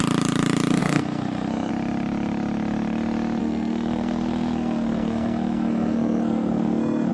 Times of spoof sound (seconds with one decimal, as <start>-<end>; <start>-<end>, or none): 0.8-1.7; 3.4-7.1